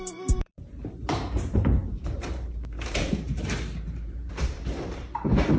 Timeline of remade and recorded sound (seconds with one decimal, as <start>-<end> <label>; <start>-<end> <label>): 0.0-5.6 remade